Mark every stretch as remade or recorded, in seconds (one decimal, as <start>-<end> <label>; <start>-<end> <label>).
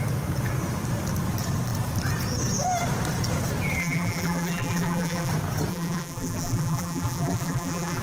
0.0-3.8 recorded; 3.8-5.3 remade; 5.3-5.7 recorded; 5.7-8.0 remade